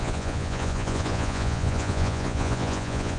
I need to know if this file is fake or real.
fake